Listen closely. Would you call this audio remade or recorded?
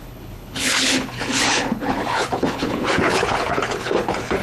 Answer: remade